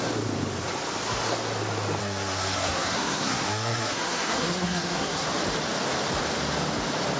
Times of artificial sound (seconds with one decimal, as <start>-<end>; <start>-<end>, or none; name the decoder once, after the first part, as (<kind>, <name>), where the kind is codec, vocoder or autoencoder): 2.0-5.3 (codec, SNAC)